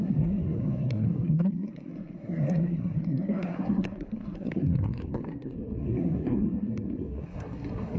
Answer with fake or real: fake